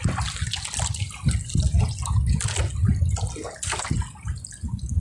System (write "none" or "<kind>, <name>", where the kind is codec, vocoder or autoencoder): none